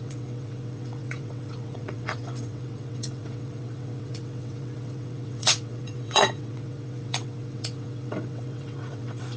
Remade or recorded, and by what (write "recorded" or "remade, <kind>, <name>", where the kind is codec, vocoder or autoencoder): remade, vocoder, WaveNeXt